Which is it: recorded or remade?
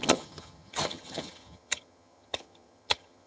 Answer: remade